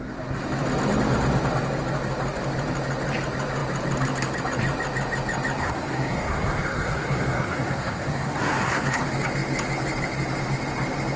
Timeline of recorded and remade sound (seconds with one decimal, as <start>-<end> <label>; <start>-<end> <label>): 0.0-5.6 recorded; 5.6-9.0 remade; 9.0-11.2 recorded

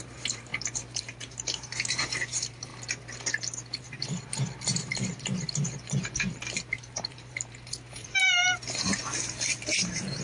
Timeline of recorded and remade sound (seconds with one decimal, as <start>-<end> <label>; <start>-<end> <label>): 0.0-0.5 remade; 0.5-1.0 recorded; 1.0-2.7 remade; 2.7-3.8 recorded; 3.8-10.2 remade

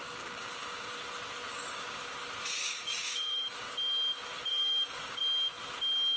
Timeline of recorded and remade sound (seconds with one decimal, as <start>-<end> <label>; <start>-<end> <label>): 0.0-0.9 remade; 0.9-1.5 recorded; 1.5-2.0 remade; 2.0-2.6 recorded; 2.6-3.7 remade; 3.7-4.5 recorded; 4.5-5.2 remade; 5.2-6.2 recorded

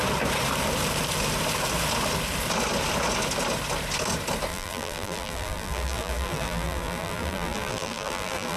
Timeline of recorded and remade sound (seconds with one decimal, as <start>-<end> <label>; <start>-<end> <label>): 0.0-4.5 recorded; 4.5-8.6 remade

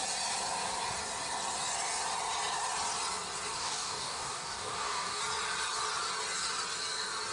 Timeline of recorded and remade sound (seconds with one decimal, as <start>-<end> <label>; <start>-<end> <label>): 0.0-3.6 recorded; 3.6-5.2 remade; 5.2-7.3 recorded

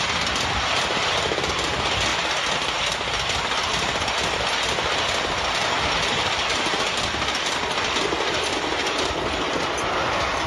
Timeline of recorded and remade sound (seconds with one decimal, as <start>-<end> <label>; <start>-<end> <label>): 0.0-10.5 recorded

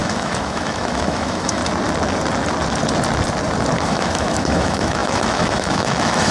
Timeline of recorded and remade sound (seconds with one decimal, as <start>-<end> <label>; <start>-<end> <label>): 0.0-1.6 remade; 1.6-3.8 recorded; 3.8-6.3 remade

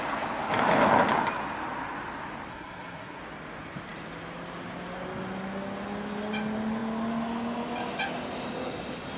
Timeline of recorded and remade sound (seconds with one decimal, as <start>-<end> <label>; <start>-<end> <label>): 0.0-2.5 recorded; 2.5-3.2 remade; 3.2-9.2 recorded